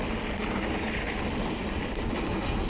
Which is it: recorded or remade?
recorded